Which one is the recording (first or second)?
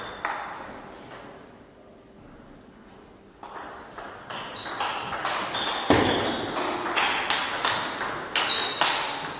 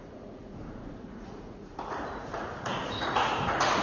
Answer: first